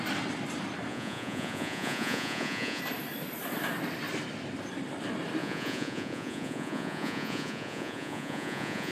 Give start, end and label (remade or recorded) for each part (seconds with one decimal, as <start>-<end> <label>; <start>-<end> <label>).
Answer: 0.0-0.9 recorded; 0.9-2.8 remade; 2.8-5.4 recorded; 5.4-8.9 remade